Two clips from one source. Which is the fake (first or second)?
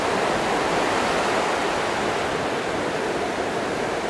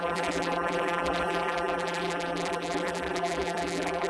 second